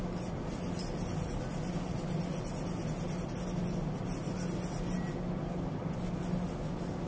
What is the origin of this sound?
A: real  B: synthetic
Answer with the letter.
A